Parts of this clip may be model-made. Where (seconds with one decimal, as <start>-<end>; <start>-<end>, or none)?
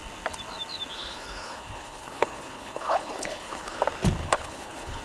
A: 1.0-3.8; 4.2-5.0